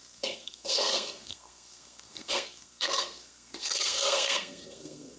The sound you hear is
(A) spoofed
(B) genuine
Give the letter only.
A